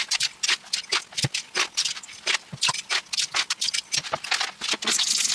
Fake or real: real